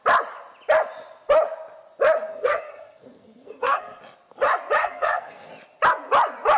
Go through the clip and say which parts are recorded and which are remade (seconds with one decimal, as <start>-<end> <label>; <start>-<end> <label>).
0.0-2.3 recorded; 2.3-4.0 remade; 4.0-4.8 recorded; 4.8-5.5 remade; 5.5-6.6 recorded